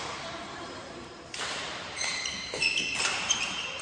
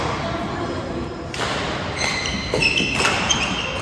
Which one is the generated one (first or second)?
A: first